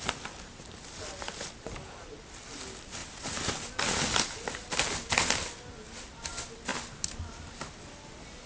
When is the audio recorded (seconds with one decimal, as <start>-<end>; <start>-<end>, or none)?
0.0-3.0; 3.5-8.5